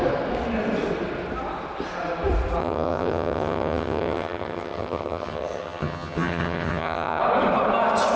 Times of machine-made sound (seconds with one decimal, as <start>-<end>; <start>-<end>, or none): 2.6-7.2